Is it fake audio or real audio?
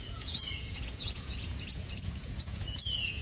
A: fake